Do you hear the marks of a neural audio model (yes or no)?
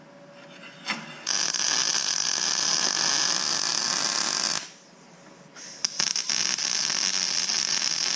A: no